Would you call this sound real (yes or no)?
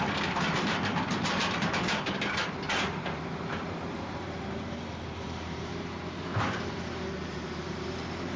no